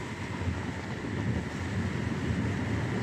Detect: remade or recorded recorded